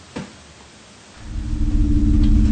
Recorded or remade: recorded